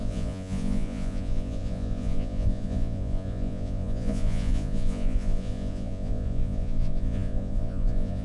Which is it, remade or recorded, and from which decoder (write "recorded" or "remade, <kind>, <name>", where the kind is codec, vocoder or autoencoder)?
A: remade, vocoder, Vocos